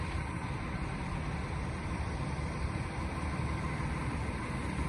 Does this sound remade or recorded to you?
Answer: recorded